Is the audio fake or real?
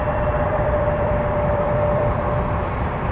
fake